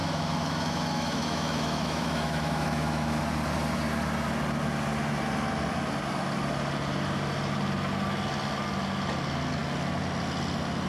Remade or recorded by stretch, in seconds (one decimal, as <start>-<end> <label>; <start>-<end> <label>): 0.0-3.2 remade; 3.2-10.9 recorded